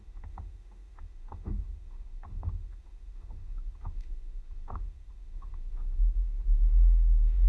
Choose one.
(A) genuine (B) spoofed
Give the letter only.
B